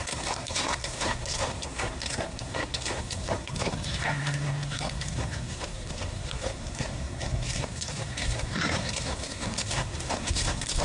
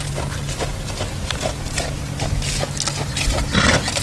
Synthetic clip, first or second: first